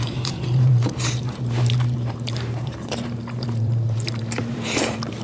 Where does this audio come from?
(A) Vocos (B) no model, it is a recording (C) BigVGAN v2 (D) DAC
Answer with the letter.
C